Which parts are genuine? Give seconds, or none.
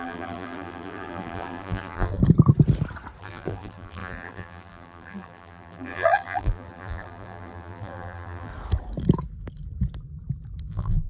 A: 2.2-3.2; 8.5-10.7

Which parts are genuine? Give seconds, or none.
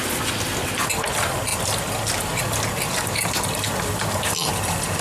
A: 0.0-5.0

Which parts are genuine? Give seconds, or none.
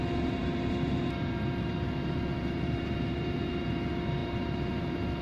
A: none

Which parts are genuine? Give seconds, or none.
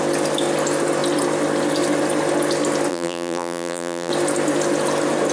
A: 0.0-2.9; 4.1-5.3